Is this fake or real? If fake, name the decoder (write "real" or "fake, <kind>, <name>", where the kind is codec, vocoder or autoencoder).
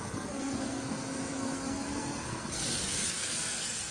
fake, codec, SNAC